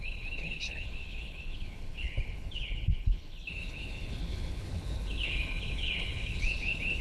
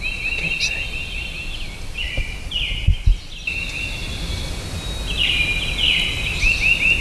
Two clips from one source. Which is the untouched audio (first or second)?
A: second